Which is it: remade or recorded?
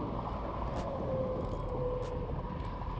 recorded